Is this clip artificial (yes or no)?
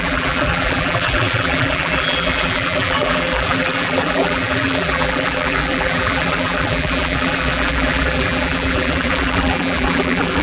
yes